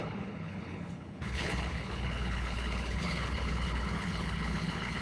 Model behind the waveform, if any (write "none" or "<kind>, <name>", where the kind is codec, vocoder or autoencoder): codec, HILCodec